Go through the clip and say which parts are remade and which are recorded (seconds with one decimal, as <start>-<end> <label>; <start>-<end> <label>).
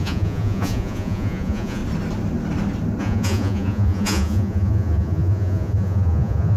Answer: 0.0-1.8 remade; 1.8-3.0 recorded; 3.0-6.6 remade